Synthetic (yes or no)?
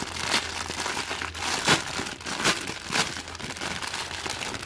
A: no